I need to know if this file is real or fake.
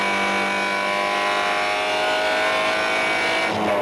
real